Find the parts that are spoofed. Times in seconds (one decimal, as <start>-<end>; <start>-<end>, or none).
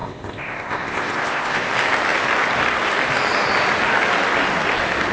0.0-1.7